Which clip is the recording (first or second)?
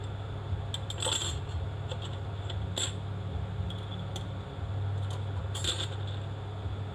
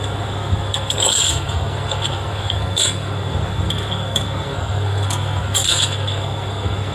first